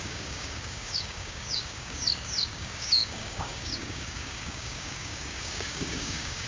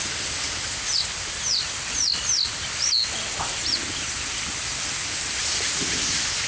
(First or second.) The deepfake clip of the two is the first